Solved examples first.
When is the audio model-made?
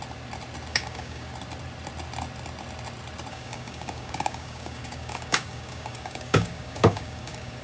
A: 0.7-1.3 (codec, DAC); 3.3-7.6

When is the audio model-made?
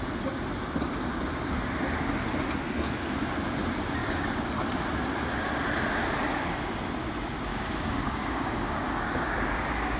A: 4.0-4.5 (codec, DAC); 7.5-10.0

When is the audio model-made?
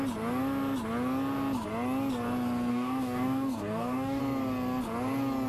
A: 2.7-4.2 (codec, DAC)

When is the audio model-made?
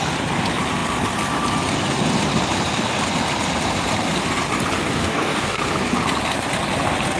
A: 5.0-5.6 (codec, DAC)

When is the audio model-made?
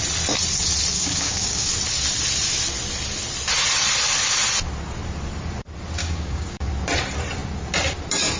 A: 0.9-1.7 (codec, DAC); 6.0-6.7